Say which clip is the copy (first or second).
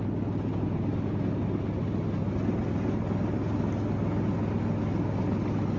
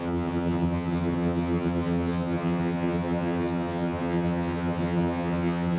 second